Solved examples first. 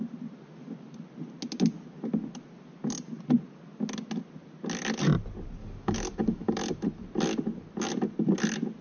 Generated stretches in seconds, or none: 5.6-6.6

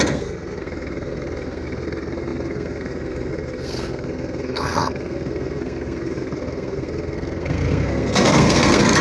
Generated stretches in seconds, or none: 0.0-9.0

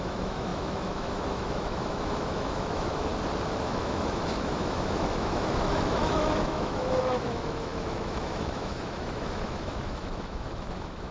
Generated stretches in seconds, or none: 0.0-3.1; 3.6-11.1

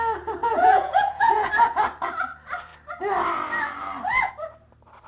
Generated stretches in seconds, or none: 0.4-1.5

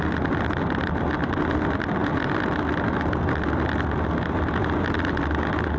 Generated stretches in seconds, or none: none